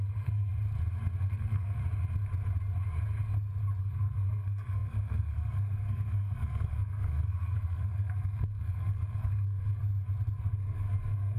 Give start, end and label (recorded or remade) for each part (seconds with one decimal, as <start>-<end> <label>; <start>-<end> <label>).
0.0-0.5 remade; 0.5-1.2 recorded; 1.2-1.8 remade; 1.8-3.8 recorded; 3.8-9.8 remade; 9.8-10.4 recorded; 10.4-11.4 remade